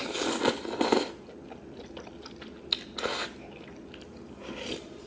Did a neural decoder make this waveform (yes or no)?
no